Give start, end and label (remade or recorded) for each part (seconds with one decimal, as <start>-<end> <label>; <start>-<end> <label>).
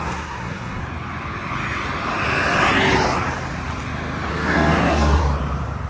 0.0-0.8 remade; 0.8-4.3 recorded; 4.3-5.2 remade; 5.2-5.9 recorded